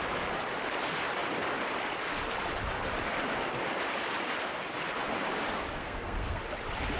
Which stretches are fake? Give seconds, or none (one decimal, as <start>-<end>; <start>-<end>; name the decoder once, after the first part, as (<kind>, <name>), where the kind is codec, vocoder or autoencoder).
5.8-6.4 (codec, SNAC)